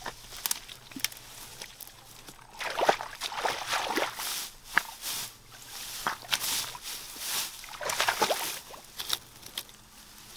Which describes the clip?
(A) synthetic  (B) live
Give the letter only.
B